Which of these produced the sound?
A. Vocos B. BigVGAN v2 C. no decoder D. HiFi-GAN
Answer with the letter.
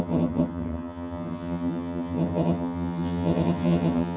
D